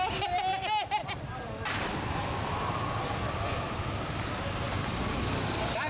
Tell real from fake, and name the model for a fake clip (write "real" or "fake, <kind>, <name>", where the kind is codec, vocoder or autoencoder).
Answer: real